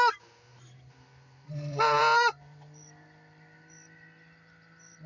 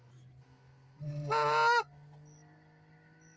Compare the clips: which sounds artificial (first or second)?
first